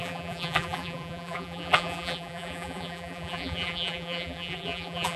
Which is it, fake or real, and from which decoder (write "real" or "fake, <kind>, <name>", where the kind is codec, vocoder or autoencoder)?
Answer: fake, vocoder, BigVGAN v2